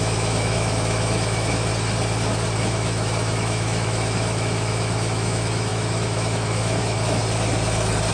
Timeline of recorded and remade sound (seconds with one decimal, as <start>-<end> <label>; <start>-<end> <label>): 0.0-1.7 remade; 1.7-2.6 recorded; 2.6-7.2 remade; 7.2-8.1 recorded